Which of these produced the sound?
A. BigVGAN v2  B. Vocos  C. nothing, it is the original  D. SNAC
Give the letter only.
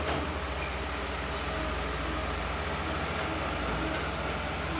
C